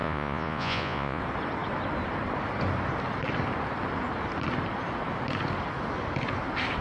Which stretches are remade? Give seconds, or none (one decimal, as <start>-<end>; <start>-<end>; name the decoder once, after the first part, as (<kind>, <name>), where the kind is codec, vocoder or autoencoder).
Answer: 0.0-1.2 (vocoder, Vocos)